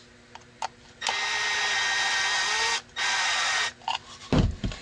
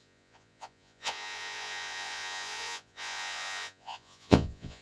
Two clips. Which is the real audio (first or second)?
first